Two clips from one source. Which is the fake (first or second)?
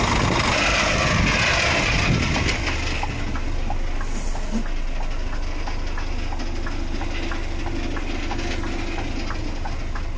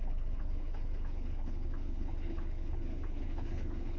second